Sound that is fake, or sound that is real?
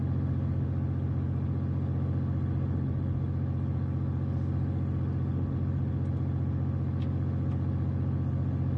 real